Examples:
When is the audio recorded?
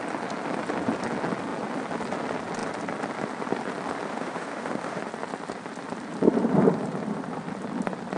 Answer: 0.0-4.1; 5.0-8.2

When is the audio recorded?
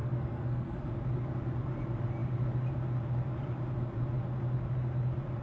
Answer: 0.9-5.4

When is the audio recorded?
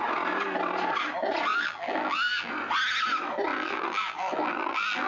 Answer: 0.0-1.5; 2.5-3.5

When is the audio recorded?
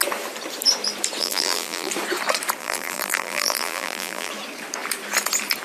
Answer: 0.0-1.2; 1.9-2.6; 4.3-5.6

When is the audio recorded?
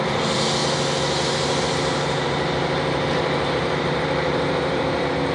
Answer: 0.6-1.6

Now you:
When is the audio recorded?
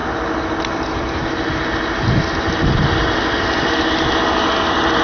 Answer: 0.0-5.0